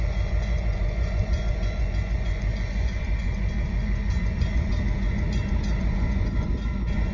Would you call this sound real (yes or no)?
no